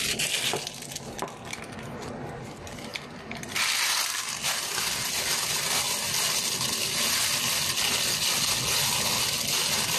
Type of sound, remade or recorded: recorded